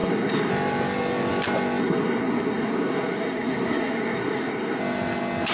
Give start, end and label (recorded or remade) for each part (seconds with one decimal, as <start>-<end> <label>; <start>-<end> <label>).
0.0-0.5 remade; 0.5-1.8 recorded; 1.8-4.8 remade; 4.8-5.5 recorded